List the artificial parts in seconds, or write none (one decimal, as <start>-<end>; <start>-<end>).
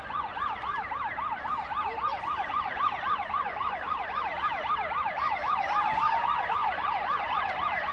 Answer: 0.0-0.7; 2.2-4.3; 5.1-7.9